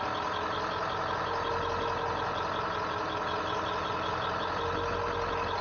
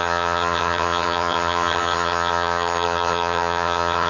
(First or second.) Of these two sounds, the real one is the first